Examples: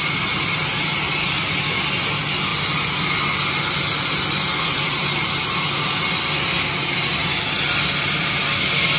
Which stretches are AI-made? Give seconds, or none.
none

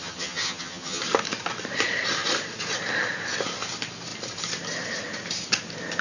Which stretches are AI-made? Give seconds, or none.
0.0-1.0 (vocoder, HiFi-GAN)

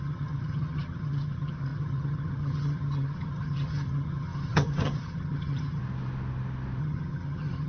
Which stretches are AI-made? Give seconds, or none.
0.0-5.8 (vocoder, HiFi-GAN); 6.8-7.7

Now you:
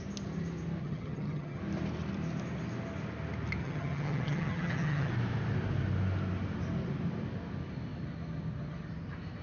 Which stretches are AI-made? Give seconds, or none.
0.8-1.6 (vocoder, HiFi-GAN); 3.6-5.1

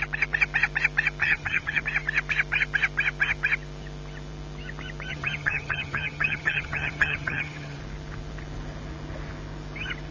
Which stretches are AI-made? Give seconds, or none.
1.2-1.8 (vocoder, HiFi-GAN); 5.1-7.8

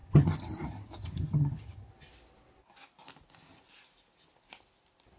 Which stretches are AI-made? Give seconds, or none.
0.0-1.9 (vocoder, HiFi-GAN)